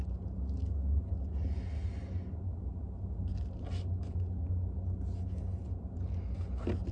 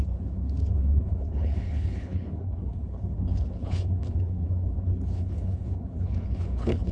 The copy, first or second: second